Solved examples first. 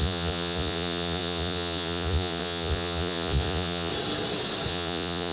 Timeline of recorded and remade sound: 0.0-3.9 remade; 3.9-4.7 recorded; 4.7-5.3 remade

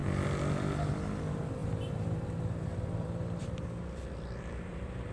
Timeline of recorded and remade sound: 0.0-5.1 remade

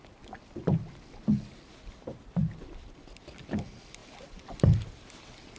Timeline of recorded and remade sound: 0.0-5.6 recorded

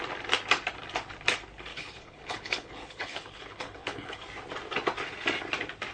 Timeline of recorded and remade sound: 0.0-1.7 recorded; 1.7-4.2 remade; 4.2-5.9 recorded

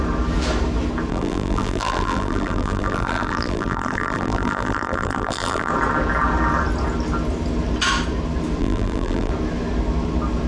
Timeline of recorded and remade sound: 0.0-1.1 recorded; 1.1-5.7 remade; 5.7-8.6 recorded; 8.6-9.3 remade; 9.3-10.5 recorded